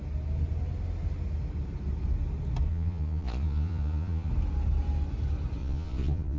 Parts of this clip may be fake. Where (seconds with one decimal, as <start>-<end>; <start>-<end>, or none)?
2.7-4.3; 5.6-6.4